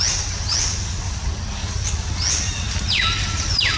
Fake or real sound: real